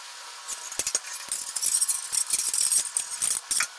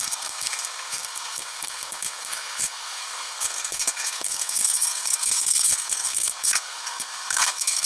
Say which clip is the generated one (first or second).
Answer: second